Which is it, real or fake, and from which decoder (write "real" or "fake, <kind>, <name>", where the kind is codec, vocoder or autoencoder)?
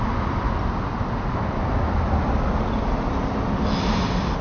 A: real